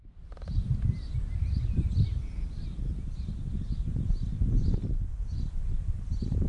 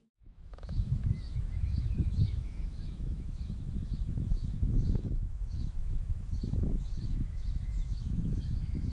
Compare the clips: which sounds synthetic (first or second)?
second